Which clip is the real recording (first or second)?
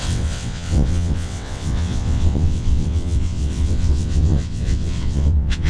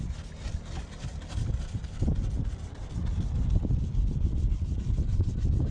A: second